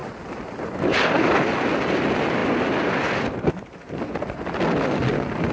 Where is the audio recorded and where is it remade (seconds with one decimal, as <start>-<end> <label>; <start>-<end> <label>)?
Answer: 0.0-0.9 remade; 0.9-5.5 recorded